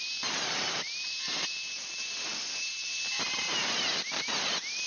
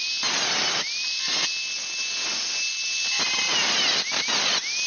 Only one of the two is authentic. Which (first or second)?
second